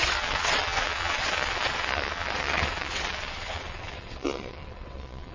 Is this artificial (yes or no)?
yes